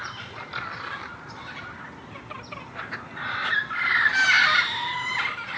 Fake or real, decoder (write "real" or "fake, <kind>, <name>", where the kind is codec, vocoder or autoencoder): real